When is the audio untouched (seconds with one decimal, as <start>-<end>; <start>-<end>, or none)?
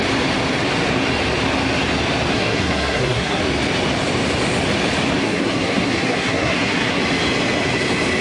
0.0-2.3; 3.4-5.2; 7.0-8.2